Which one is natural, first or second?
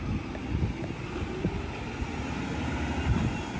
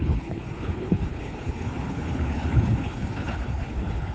first